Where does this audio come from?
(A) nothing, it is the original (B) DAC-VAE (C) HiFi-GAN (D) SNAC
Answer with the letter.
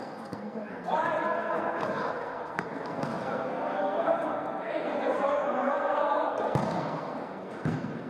D